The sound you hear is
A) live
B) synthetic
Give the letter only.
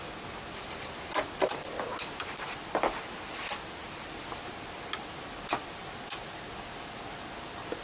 A